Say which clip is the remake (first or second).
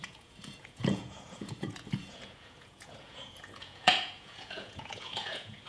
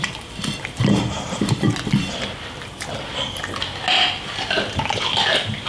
first